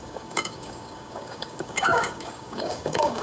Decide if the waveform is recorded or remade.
remade